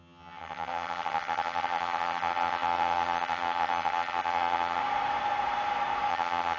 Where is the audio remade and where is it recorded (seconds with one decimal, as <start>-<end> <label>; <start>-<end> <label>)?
0.0-4.8 remade; 4.8-6.1 recorded; 6.1-6.6 remade